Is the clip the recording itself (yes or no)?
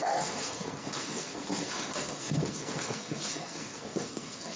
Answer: no